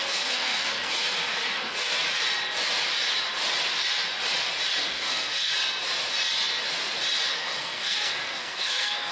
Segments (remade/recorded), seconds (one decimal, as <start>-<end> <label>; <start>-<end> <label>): 0.0-1.9 remade; 1.9-4.8 recorded; 4.8-5.5 remade; 5.5-7.3 recorded; 7.3-9.1 remade